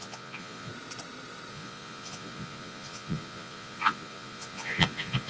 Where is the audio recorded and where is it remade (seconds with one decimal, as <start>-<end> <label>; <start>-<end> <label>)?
0.0-0.7 remade; 0.7-1.5 recorded; 1.5-5.3 remade